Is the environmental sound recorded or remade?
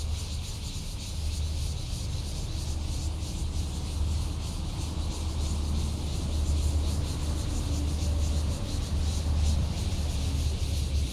recorded